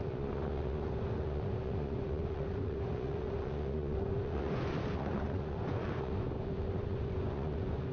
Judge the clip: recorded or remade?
remade